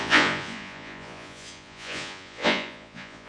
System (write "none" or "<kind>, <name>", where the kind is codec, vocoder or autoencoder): vocoder, Vocos